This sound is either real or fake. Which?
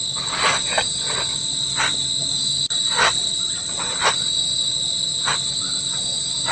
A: real